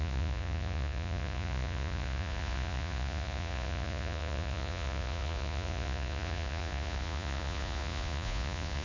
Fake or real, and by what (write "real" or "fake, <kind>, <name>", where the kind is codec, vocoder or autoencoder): fake, vocoder, Vocos